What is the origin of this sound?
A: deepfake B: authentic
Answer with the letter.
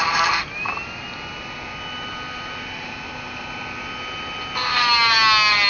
B